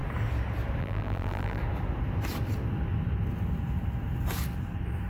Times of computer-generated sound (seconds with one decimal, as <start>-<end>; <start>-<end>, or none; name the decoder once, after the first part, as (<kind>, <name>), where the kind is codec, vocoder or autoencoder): 0.8-1.6 (vocoder, BigVGAN v2)